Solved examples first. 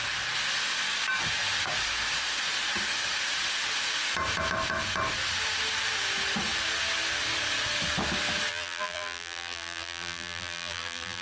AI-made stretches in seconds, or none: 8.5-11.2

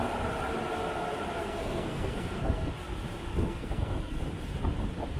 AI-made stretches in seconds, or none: 1.4-2.7; 3.3-4.2

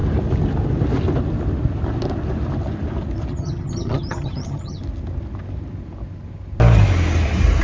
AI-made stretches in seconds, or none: 3.3-4.8